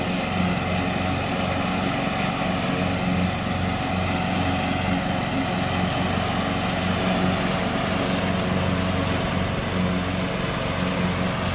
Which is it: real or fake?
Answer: real